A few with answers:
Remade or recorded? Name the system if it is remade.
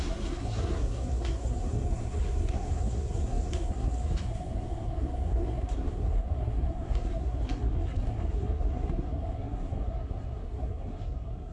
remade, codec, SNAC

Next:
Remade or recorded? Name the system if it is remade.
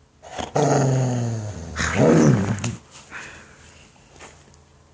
recorded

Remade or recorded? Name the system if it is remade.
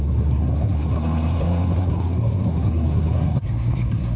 remade, codec, SNAC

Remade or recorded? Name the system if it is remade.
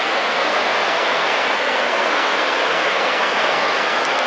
remade, codec, SNAC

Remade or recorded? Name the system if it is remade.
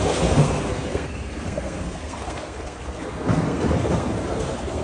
remade, codec, SNAC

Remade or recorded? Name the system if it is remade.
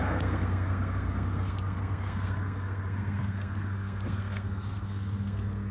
remade, codec, SNAC